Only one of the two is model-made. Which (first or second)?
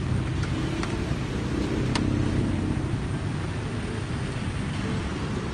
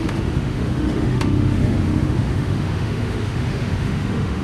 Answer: second